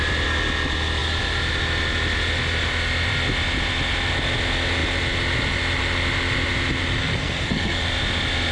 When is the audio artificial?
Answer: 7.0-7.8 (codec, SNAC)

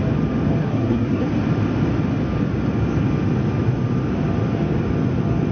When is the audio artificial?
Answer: 0.6-1.2 (codec, SNAC)